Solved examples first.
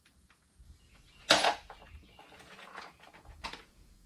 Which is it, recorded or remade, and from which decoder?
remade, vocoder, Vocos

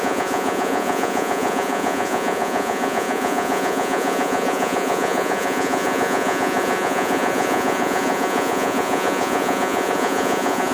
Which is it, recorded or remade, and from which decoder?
remade, vocoder, Vocos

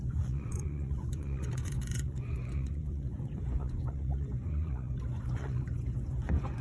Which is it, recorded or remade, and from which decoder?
remade, vocoder, Vocos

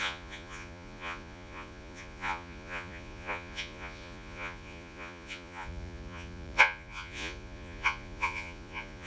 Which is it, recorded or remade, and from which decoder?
remade, vocoder, Vocos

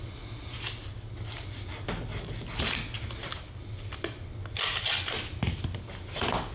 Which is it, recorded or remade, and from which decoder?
recorded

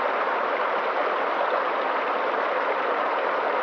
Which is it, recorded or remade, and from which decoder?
recorded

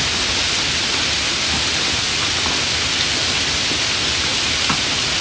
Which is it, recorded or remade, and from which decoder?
recorded